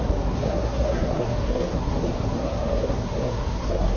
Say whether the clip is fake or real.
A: fake